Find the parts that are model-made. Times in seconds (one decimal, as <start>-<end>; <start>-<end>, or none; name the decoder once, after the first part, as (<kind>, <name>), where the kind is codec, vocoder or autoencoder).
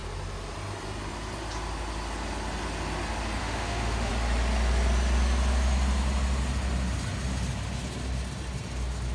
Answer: 3.4-4.1 (autoencoder, DAC-VAE)